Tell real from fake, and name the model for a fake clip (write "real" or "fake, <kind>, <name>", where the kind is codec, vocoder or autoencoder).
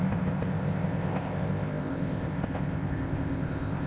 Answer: fake, codec, ZipCodec